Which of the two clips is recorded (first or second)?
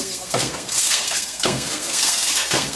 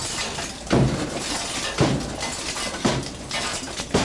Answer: second